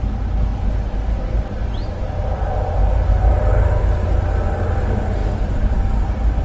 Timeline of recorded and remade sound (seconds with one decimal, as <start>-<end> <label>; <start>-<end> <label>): 0.0-0.5 recorded; 0.5-2.0 remade; 2.0-6.4 recorded